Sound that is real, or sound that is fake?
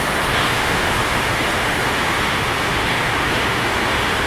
fake